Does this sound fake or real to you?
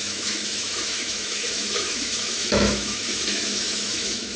fake